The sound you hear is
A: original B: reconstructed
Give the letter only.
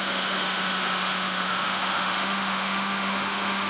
B